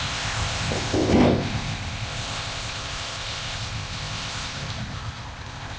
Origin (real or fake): fake